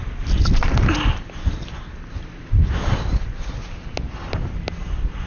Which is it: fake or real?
real